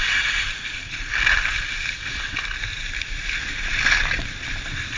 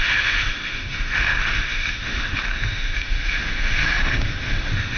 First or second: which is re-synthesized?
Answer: second